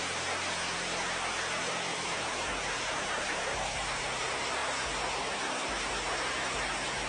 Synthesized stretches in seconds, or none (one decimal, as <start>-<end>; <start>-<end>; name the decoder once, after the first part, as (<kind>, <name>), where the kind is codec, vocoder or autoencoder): none